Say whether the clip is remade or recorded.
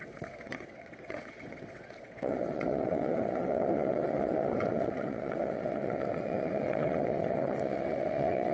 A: remade